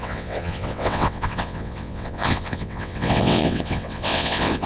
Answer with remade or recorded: remade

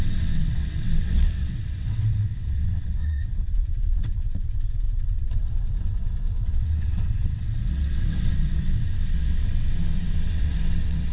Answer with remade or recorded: remade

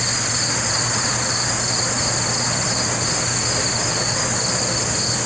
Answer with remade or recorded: recorded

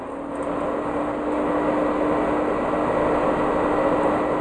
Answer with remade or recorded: recorded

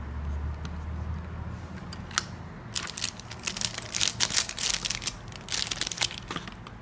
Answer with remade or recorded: recorded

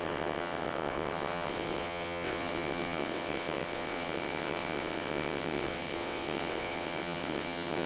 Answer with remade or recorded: remade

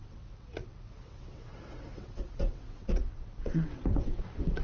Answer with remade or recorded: remade